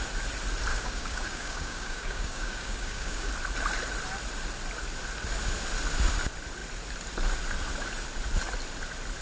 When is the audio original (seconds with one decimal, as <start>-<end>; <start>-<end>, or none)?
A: 0.0-0.7; 3.3-9.2